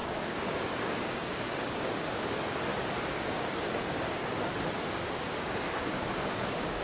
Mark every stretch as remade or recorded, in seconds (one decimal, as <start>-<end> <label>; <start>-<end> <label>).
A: 0.0-2.1 remade; 2.1-2.7 recorded; 2.7-6.8 remade